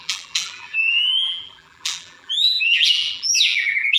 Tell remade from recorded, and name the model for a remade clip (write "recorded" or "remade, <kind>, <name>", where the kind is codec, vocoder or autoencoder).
remade, vocoder, BigVGAN v2